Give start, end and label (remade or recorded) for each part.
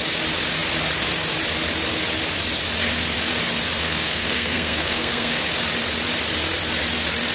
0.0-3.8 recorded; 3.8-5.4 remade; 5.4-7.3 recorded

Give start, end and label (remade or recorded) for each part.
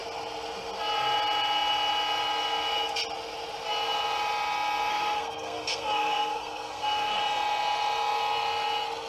0.0-4.9 recorded; 4.9-7.2 remade; 7.2-9.1 recorded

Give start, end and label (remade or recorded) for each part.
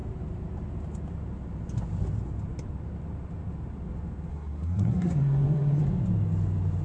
0.0-4.3 recorded; 4.3-5.8 remade; 5.8-6.8 recorded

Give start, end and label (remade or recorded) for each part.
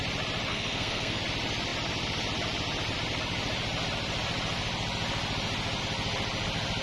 0.0-0.5 recorded; 0.5-1.2 remade; 1.2-6.8 recorded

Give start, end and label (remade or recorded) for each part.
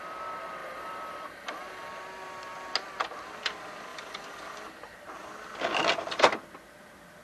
0.0-0.6 recorded; 0.6-1.9 remade; 1.9-3.9 recorded; 3.9-4.7 remade; 4.7-7.2 recorded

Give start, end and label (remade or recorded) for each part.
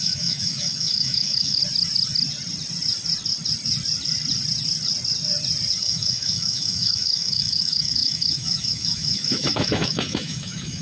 0.0-1.6 remade; 1.6-5.8 recorded; 5.8-10.8 remade